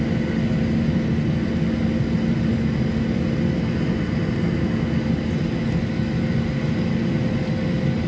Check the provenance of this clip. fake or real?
real